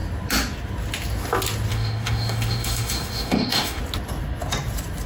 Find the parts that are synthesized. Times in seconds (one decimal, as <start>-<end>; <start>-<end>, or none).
1.7-3.8